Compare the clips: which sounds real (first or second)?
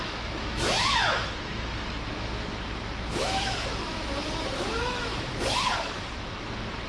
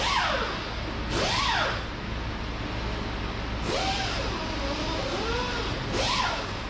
second